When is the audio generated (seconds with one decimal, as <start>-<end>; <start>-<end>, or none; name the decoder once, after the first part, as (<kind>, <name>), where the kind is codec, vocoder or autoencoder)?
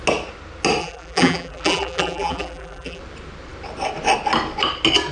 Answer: 0.8-3.0 (vocoder, BigVGAN v2)